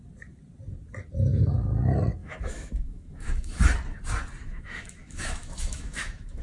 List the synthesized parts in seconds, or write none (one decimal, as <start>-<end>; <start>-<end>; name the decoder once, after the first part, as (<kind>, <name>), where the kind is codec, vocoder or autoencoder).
2.2-3.6 (autoencoder, DAC-VAE); 4.4-6.4